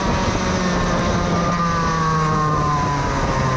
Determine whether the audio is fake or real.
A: real